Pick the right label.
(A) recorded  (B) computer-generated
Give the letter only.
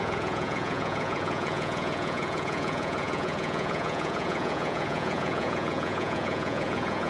B